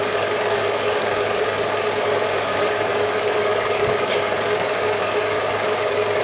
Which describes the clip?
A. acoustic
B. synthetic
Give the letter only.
B